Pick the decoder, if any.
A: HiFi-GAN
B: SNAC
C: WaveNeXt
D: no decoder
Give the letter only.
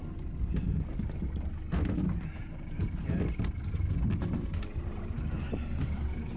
D